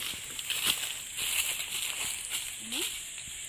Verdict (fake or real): real